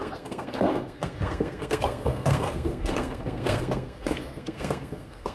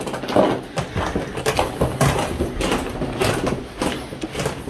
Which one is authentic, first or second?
second